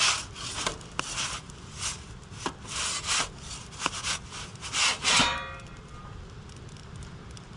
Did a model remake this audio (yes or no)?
no